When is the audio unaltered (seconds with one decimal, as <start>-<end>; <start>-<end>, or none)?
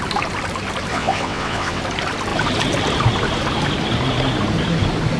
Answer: 0.0-0.9; 1.8-5.2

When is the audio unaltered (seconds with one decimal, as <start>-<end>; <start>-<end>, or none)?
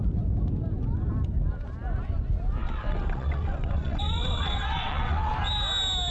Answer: 0.0-2.6; 5.3-6.1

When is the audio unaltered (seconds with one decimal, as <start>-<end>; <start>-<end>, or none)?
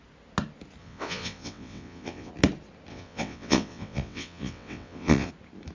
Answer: 0.0-0.8; 2.3-2.9; 5.3-5.7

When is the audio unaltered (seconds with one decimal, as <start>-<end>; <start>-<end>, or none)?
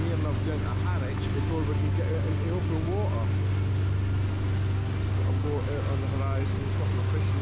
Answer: 0.0-7.4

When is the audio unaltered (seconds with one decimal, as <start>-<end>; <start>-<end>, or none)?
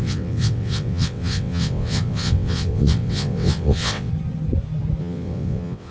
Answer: 4.1-5.0